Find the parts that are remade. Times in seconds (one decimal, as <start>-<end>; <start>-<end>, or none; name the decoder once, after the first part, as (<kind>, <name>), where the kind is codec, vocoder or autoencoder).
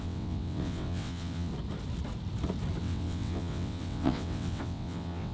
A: 0.0-1.5 (vocoder, WaveNeXt); 2.8-5.3